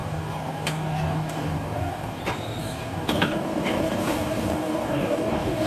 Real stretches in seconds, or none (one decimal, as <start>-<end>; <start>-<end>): 2.2-2.6